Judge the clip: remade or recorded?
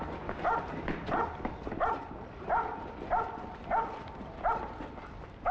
recorded